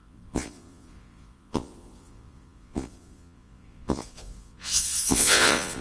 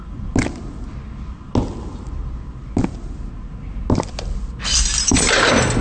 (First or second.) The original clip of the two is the second